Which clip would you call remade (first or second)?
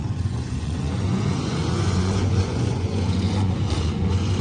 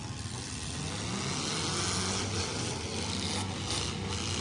first